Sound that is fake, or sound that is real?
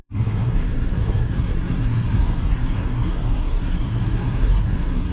fake